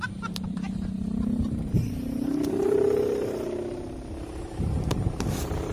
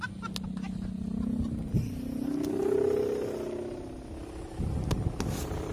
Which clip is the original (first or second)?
second